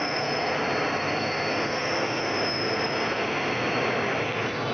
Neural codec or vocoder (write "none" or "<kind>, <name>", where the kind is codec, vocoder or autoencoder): none